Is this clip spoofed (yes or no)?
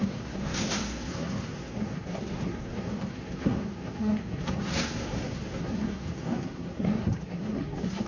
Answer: yes